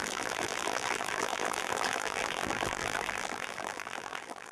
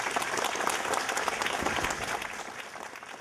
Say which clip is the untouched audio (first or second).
second